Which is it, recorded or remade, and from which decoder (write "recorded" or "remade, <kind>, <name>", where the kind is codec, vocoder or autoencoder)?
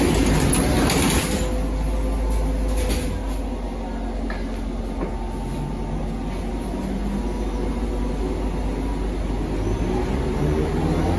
recorded